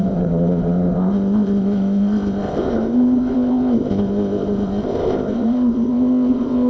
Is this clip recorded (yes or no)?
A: no